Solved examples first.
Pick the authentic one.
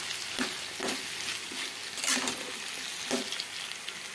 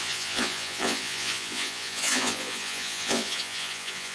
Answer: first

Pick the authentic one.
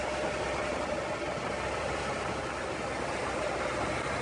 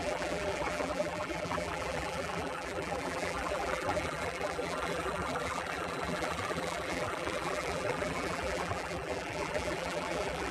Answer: first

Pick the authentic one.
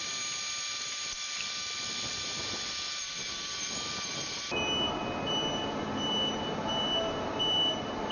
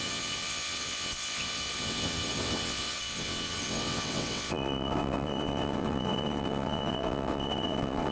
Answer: first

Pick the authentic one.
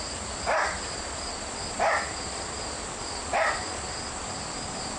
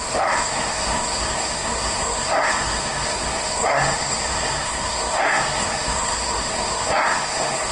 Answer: first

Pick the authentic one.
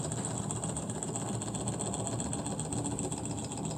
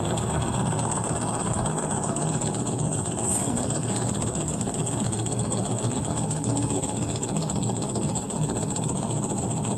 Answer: first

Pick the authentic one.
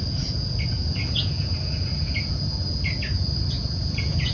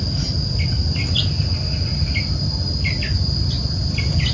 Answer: second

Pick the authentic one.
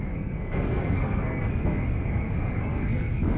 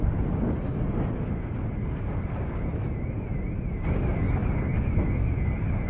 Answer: second